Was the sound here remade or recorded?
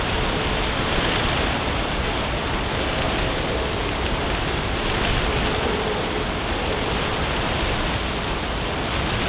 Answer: recorded